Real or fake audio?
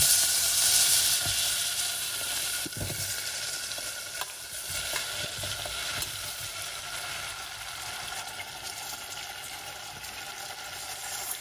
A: real